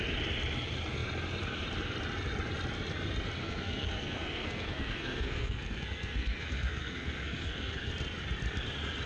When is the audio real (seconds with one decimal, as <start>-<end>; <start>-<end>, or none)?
0.0-3.4; 7.9-9.1

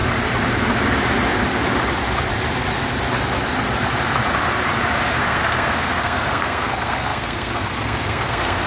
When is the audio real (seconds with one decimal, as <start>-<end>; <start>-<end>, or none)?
0.0-5.2

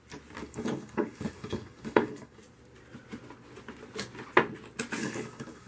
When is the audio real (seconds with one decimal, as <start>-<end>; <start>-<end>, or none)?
0.0-0.4; 2.4-5.0

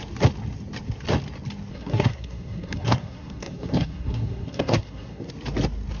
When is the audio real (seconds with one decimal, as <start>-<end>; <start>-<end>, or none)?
0.0-1.7; 5.3-6.0

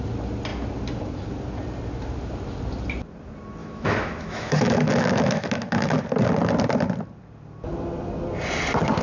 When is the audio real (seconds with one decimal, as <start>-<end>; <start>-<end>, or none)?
0.0-3.6; 6.0-9.0